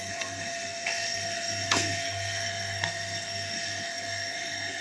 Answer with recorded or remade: remade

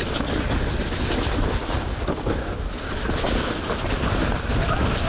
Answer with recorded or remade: recorded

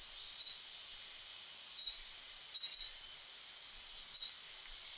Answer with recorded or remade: recorded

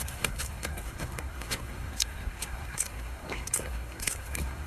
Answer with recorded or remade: remade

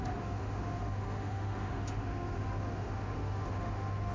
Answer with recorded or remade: remade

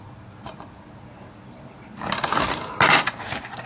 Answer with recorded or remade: recorded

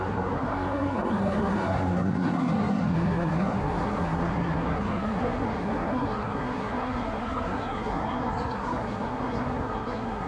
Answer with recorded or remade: remade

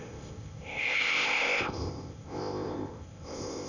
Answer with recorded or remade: remade